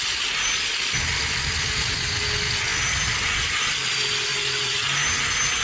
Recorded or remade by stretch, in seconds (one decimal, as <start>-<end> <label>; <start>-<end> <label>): 0.0-5.6 recorded